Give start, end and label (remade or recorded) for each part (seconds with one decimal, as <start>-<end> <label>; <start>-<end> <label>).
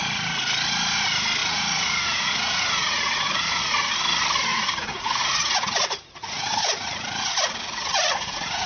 0.0-1.4 recorded; 1.4-3.9 remade; 3.9-4.5 recorded; 4.5-8.7 remade